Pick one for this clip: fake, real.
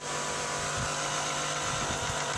real